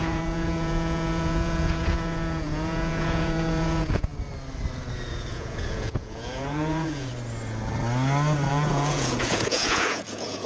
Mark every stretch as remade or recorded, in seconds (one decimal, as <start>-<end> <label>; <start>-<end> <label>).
0.0-4.1 remade; 4.1-5.1 recorded; 5.1-7.1 remade; 7.1-8.5 recorded; 8.5-10.5 remade